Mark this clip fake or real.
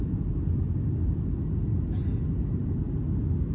real